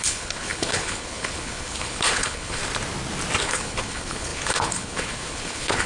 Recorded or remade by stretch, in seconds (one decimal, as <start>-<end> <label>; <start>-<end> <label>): 0.0-2.6 remade; 2.6-3.4 recorded; 3.4-5.9 remade

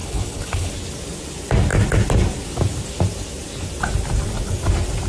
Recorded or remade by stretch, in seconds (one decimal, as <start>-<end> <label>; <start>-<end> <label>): 0.0-0.7 remade; 0.7-5.1 recorded

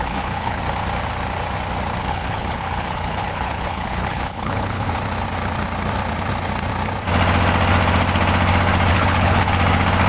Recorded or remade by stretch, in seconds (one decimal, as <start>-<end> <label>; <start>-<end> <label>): 0.0-0.6 remade; 0.6-2.0 recorded; 2.0-4.9 remade; 4.9-8.9 recorded; 8.9-9.5 remade; 9.5-10.1 recorded

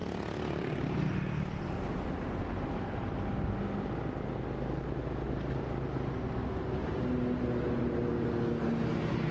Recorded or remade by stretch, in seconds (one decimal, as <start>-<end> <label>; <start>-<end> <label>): 0.0-9.3 recorded